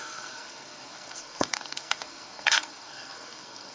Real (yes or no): no